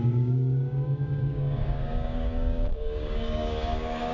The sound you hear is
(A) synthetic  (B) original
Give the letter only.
A